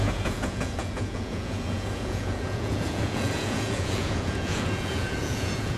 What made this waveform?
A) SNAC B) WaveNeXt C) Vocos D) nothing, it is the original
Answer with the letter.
C